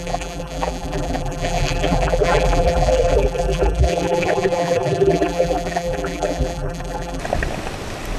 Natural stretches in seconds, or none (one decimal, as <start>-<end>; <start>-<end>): 7.2-8.2